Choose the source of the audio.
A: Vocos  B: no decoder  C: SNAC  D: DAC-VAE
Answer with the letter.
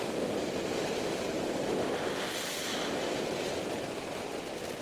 B